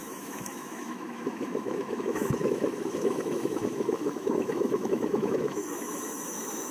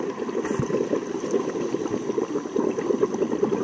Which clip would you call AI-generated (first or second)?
first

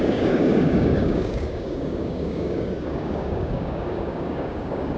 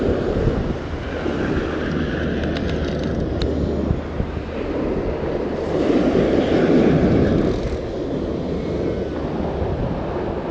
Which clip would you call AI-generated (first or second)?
first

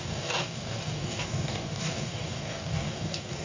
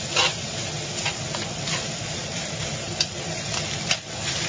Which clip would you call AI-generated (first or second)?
first